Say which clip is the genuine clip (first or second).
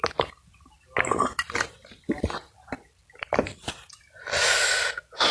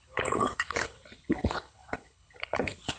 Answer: first